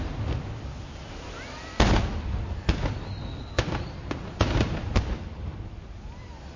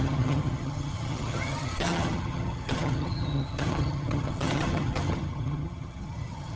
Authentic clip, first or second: first